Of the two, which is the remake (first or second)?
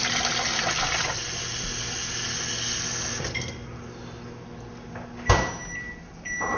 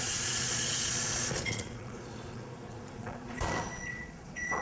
second